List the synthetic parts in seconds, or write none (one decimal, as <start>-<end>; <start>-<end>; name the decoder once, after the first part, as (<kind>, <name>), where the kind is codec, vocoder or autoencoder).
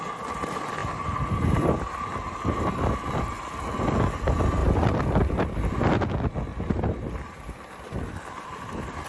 4.6-6.0 (vocoder, BigVGAN v2); 6.5-7.1